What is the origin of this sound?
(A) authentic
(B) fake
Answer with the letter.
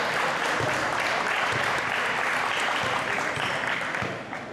A